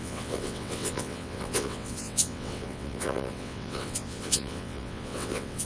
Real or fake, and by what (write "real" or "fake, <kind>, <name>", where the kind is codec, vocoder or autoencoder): fake, vocoder, WaveNeXt